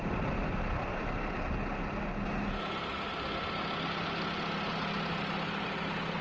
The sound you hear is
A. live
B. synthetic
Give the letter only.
A